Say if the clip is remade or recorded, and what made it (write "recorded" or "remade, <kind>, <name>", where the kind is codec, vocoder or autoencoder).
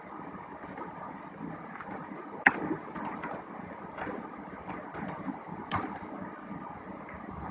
recorded